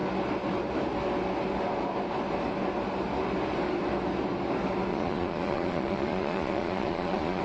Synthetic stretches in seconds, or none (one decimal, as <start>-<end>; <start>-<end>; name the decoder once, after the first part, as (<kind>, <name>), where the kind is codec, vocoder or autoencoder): 4.9-7.4 (vocoder, Vocos)